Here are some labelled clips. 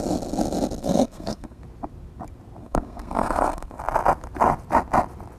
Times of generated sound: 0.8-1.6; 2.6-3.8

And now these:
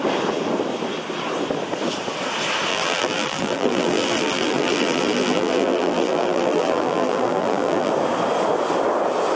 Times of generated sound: 2.7-7.9